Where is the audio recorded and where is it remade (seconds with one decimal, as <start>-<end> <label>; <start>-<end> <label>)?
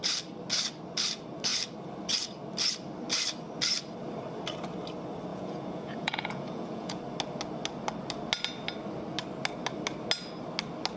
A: 0.0-5.3 recorded; 5.3-7.0 remade; 7.0-11.0 recorded